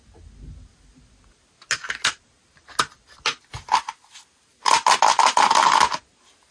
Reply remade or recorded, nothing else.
recorded